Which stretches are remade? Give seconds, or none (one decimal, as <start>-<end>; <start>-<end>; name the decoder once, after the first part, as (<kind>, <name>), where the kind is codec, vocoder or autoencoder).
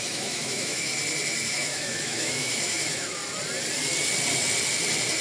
0.0-0.9 (autoencoder, DAC-VAE); 1.5-3.2